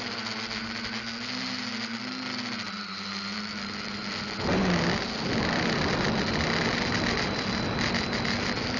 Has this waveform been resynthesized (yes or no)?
no